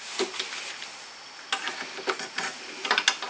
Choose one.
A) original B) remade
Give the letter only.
A